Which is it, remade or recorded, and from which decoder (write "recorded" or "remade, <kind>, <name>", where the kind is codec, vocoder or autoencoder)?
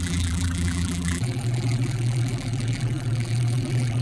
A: remade, vocoder, BigVGAN v2